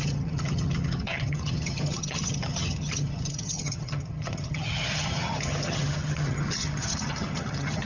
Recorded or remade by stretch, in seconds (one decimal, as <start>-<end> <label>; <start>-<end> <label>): 0.0-7.9 remade